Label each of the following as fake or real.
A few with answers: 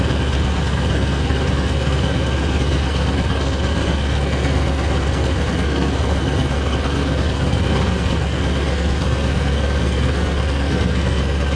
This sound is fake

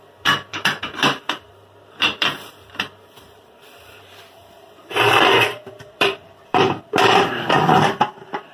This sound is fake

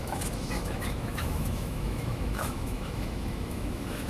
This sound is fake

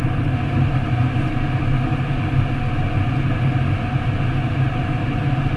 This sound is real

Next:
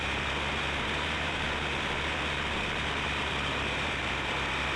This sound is fake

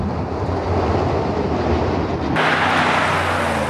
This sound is real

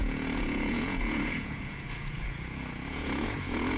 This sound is fake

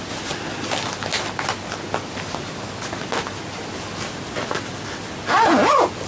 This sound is real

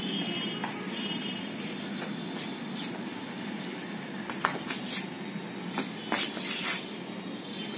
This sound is real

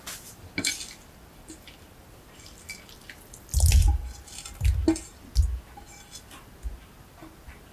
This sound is real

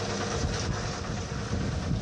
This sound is real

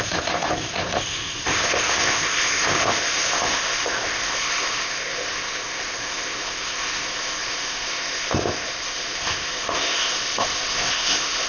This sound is fake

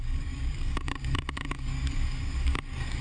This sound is fake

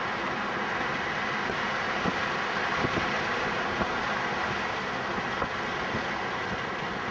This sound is real